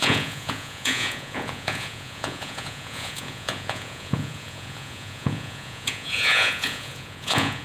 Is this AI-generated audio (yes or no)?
yes